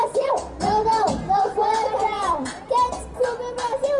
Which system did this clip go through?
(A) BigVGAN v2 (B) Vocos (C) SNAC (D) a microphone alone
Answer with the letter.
D